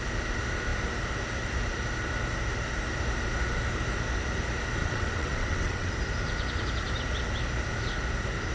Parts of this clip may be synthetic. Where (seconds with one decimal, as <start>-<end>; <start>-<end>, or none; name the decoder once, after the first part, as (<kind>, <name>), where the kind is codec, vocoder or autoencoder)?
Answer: 4.8-5.9 (vocoder, WaveNeXt)